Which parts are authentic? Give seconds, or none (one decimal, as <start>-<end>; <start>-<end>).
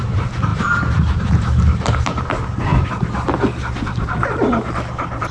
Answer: none